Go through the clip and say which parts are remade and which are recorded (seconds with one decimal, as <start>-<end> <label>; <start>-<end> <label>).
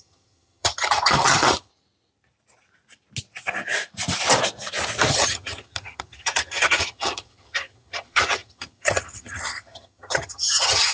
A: 0.0-1.7 remade; 1.7-5.1 recorded; 5.1-10.9 remade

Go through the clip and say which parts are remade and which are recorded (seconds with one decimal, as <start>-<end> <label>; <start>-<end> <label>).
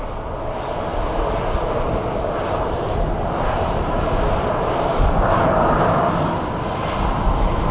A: 0.0-7.7 recorded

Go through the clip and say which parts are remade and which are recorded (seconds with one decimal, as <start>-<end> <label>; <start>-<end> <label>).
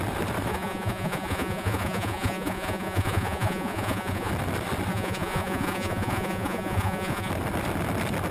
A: 0.0-0.5 recorded; 0.5-4.3 remade; 4.3-4.9 recorded; 4.9-7.3 remade; 7.3-8.3 recorded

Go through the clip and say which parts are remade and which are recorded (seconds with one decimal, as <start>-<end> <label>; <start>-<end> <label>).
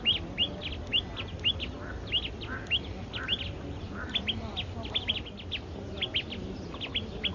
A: 0.0-7.3 recorded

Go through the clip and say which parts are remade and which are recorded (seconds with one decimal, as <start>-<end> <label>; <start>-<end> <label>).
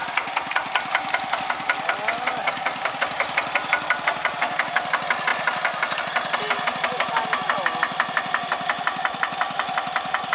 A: 0.0-2.4 recorded; 2.4-3.0 remade; 3.0-10.3 recorded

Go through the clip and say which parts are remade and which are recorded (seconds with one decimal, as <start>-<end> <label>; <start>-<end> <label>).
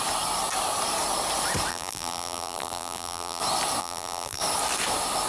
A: 0.0-1.7 recorded; 1.7-3.4 remade; 3.4-3.8 recorded; 3.8-4.4 remade; 4.4-5.3 recorded